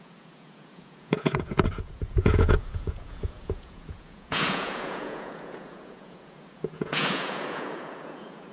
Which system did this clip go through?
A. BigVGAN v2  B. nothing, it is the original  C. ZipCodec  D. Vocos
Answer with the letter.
D